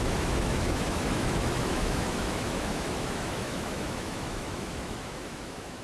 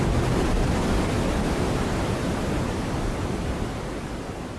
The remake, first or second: first